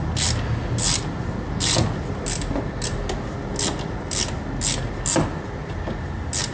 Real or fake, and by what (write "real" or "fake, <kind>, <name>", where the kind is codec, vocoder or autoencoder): real